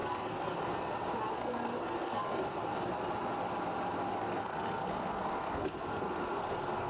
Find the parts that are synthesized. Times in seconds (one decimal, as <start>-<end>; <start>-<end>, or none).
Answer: 0.0-0.5; 1.3-2.4; 4.1-6.9